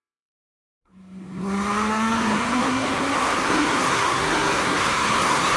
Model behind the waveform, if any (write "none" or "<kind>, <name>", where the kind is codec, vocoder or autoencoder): codec, SNAC